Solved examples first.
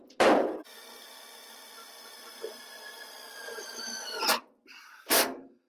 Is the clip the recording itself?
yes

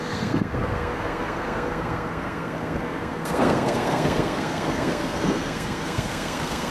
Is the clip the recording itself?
no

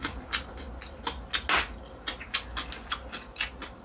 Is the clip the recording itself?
yes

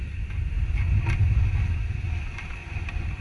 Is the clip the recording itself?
yes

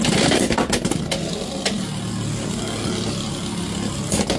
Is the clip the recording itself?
yes